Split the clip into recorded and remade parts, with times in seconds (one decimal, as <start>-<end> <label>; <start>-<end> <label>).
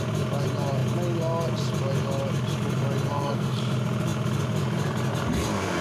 0.0-3.1 recorded; 3.1-3.6 remade; 3.6-5.8 recorded